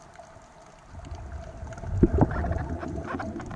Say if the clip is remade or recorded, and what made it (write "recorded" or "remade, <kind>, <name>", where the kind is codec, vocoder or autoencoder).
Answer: recorded